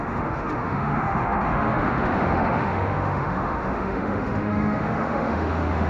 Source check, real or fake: fake